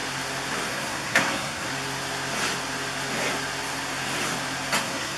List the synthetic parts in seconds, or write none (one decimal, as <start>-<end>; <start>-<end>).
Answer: 0.7-1.7; 4.8-5.2